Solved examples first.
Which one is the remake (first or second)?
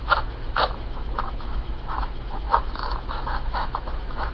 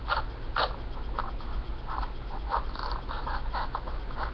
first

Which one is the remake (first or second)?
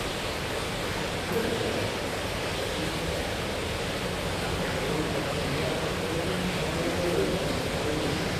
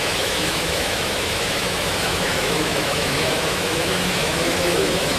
second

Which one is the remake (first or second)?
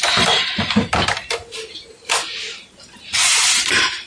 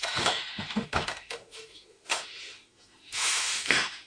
second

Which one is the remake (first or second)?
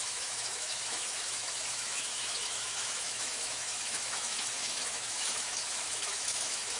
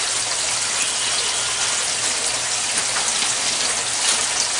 first